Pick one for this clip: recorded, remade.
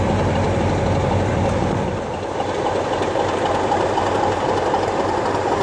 recorded